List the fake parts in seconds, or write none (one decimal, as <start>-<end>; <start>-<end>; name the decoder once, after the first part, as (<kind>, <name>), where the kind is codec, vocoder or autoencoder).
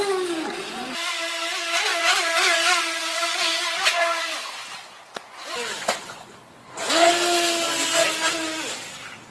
1.9-7.1 (vocoder, Vocos)